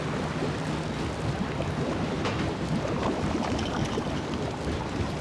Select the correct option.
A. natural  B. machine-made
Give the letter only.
A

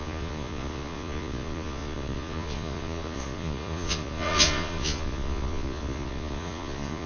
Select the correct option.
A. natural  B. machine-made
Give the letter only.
B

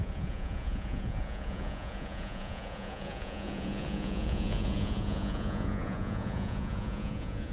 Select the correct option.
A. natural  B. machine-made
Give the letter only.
B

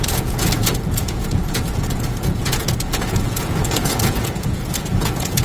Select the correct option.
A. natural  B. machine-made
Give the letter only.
B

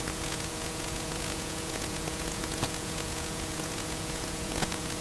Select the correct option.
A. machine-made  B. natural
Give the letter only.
A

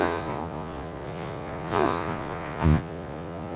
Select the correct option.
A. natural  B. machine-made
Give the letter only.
B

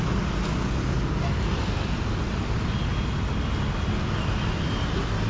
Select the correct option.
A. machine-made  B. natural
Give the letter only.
B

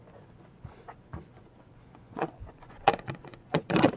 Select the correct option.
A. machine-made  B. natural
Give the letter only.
A